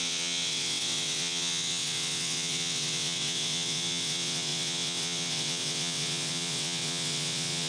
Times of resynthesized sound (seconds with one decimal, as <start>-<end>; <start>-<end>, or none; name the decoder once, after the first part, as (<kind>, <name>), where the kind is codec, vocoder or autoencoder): 0.0-7.7 (vocoder, WaveNeXt)